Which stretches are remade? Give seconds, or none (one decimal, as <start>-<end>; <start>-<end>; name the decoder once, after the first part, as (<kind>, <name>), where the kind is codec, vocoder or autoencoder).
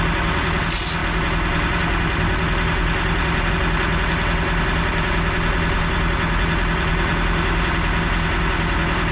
none